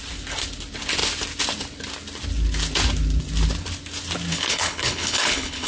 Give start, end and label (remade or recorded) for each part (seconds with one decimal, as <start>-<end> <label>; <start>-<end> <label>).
0.0-4.3 recorded; 4.3-5.7 remade